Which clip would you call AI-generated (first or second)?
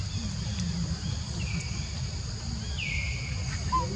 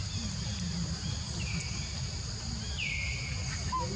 first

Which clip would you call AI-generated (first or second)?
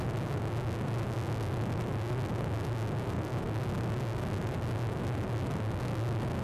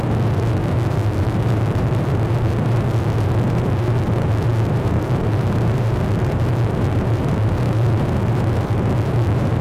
second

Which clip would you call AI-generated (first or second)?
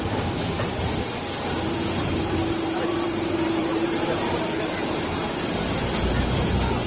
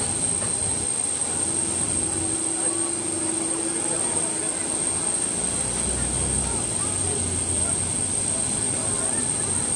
first